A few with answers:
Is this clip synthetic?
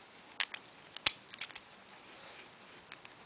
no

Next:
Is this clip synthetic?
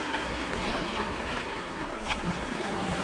yes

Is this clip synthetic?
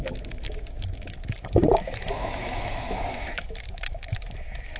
yes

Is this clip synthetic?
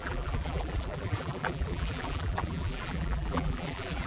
yes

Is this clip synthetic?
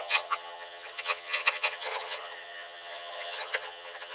yes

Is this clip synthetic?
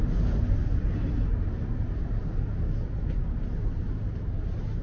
no